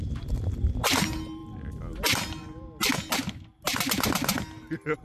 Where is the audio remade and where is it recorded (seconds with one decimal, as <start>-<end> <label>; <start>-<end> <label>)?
0.0-5.0 recorded